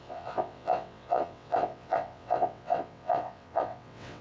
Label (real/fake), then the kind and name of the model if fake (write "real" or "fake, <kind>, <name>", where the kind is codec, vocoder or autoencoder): fake, vocoder, WaveNeXt